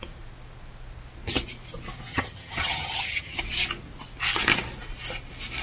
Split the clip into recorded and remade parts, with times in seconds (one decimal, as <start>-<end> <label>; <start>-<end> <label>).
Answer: 0.0-2.1 recorded; 2.1-3.4 remade; 3.4-5.6 recorded